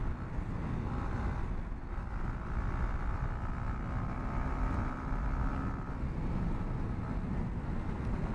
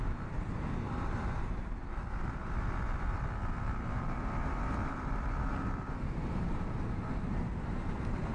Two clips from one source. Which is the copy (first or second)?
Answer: second